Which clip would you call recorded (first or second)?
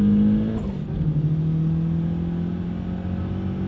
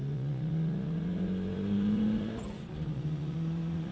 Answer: first